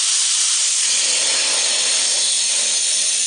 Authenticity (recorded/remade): remade